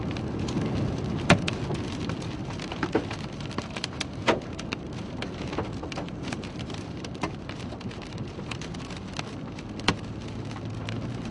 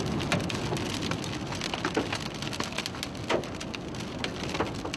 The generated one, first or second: first